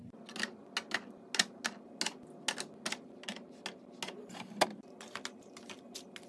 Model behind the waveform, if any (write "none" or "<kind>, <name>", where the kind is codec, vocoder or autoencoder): none